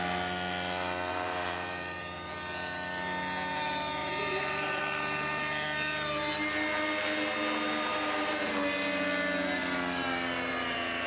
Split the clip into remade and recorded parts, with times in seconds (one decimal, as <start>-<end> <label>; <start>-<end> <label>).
0.0-1.1 recorded; 1.1-2.3 remade; 2.3-4.0 recorded; 4.0-4.8 remade; 4.8-7.9 recorded; 7.9-8.5 remade; 8.5-11.1 recorded

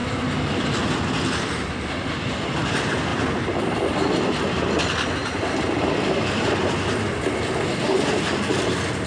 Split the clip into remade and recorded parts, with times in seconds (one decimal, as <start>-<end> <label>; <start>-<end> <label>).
0.0-0.8 remade; 0.8-3.1 recorded; 3.1-4.1 remade; 4.1-9.1 recorded

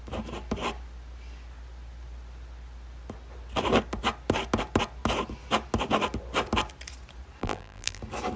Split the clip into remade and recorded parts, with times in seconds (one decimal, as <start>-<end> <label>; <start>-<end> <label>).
0.0-7.4 recorded; 7.4-8.0 remade; 8.0-8.4 recorded

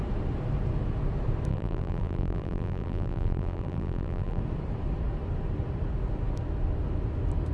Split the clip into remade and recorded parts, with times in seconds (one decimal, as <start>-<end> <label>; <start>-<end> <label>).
0.0-1.5 recorded; 1.5-4.4 remade; 4.4-7.5 recorded

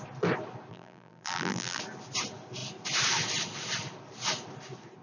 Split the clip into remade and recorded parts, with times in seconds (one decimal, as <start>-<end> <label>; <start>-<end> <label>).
0.0-0.7 recorded; 0.7-1.8 remade; 1.8-5.0 recorded